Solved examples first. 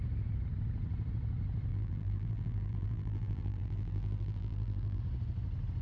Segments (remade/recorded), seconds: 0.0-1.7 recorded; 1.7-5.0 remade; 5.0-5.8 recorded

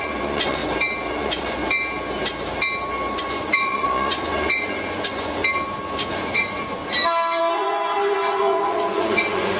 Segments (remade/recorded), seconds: 0.0-0.6 remade; 0.6-1.1 recorded; 1.1-1.6 remade; 1.6-3.2 recorded; 3.2-5.4 remade; 5.4-6.1 recorded; 6.1-6.8 remade; 6.8-7.4 recorded; 7.4-9.6 remade

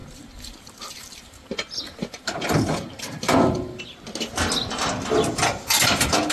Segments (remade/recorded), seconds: 0.0-3.8 remade; 3.8-6.3 recorded

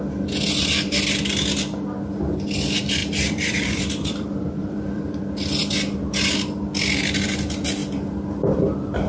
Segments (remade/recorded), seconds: 0.0-3.0 recorded; 3.0-5.2 remade; 5.2-9.1 recorded

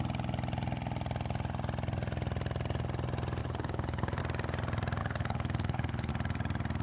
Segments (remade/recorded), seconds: 0.0-3.4 recorded; 3.4-4.2 remade; 4.2-5.0 recorded; 5.0-6.1 remade; 6.1-6.8 recorded

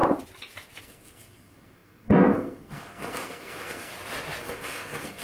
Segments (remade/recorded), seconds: 0.0-0.8 recorded; 0.8-3.9 remade; 3.9-4.4 recorded; 4.4-5.2 remade

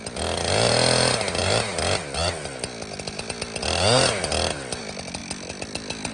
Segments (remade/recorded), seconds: 0.0-6.1 recorded

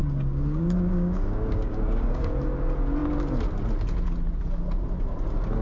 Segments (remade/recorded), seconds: 0.0-2.4 remade; 2.4-5.6 recorded